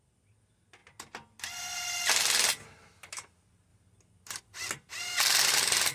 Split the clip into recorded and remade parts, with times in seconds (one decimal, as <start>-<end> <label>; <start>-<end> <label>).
0.0-5.9 recorded